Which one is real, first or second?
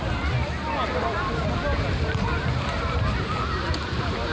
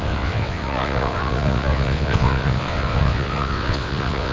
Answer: first